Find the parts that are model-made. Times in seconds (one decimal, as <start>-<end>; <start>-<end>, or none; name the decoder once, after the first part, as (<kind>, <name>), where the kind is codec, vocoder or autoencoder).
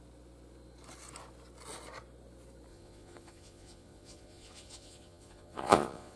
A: 2.7-6.2 (vocoder, Vocos)